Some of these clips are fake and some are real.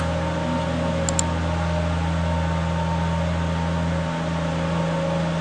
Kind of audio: real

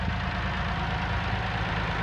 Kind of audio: real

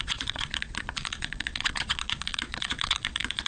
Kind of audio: fake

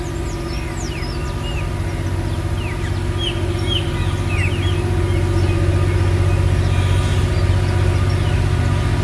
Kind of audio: real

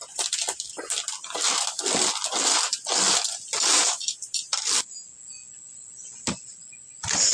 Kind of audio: real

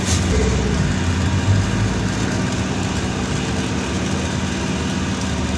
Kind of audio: real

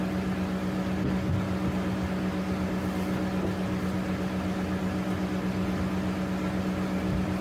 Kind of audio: real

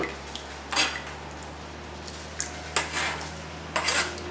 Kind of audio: real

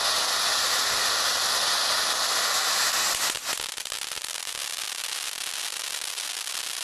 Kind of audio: real